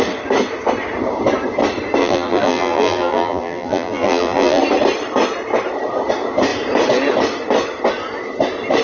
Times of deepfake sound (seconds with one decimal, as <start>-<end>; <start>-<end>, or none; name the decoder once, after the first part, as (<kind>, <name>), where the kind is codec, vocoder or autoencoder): 2.0-4.6 (vocoder, BigVGAN v2)